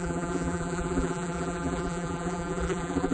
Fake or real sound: fake